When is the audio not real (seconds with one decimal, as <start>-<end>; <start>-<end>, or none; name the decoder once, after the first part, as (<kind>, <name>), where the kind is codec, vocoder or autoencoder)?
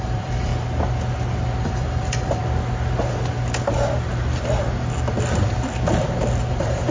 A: 0.0-0.5 (vocoder, BigVGAN v2); 1.6-2.4; 6.5-6.9